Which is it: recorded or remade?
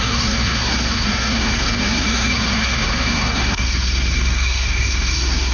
remade